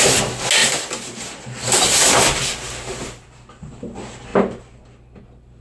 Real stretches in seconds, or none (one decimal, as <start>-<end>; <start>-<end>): 0.0-0.6; 3.8-4.3